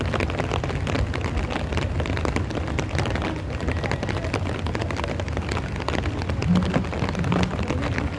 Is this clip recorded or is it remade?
recorded